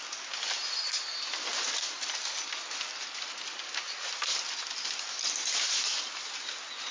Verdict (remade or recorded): recorded